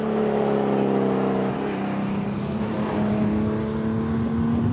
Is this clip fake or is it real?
real